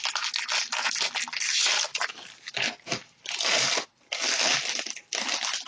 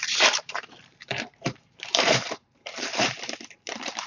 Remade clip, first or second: second